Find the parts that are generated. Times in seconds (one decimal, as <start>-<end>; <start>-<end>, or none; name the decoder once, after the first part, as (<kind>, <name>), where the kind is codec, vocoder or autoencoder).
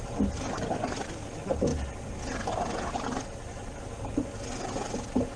none